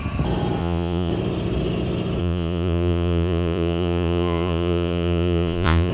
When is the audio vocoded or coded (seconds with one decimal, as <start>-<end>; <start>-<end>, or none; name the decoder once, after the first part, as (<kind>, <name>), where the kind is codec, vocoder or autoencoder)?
0.6-1.1 (vocoder, Vocos); 2.2-5.9